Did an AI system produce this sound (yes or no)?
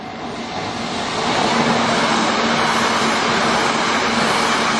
no